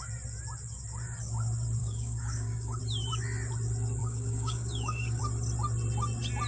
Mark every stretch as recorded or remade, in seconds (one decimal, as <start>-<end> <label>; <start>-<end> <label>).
0.0-1.8 recorded; 1.8-2.8 remade; 2.8-4.0 recorded; 4.0-5.2 remade; 5.2-6.5 recorded